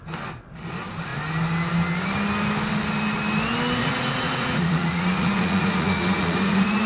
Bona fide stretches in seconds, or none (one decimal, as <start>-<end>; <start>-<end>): 0.0-3.8

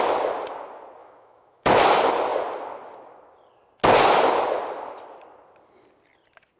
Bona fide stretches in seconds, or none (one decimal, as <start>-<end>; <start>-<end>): 0.0-1.0; 1.8-6.6